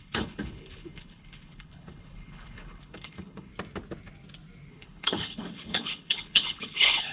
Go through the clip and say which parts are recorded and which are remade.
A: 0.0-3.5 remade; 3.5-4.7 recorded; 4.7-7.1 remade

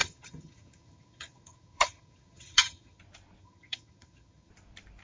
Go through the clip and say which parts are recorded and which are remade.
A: 0.0-3.0 remade; 3.0-3.4 recorded; 3.4-4.5 remade; 4.5-5.0 recorded

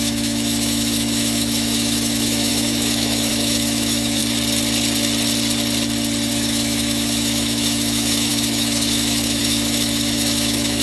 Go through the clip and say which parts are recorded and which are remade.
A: 0.0-4.2 remade; 4.2-6.3 recorded; 6.3-10.8 remade